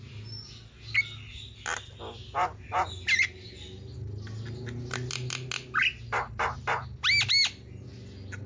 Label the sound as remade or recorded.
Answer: recorded